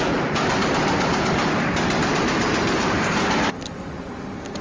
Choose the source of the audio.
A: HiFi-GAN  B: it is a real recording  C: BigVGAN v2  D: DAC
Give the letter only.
C